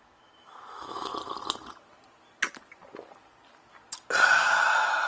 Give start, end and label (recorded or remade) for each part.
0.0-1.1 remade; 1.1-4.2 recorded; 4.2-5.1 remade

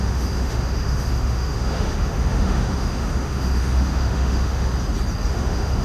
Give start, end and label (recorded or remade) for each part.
0.0-4.7 remade; 4.7-5.3 recorded; 5.3-5.8 remade